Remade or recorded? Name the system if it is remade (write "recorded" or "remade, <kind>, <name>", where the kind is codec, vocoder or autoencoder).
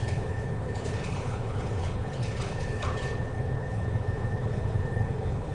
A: remade, codec, HILCodec